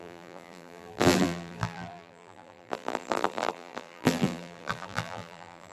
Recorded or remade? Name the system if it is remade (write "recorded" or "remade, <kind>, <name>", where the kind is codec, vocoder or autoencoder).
remade, vocoder, BigVGAN v2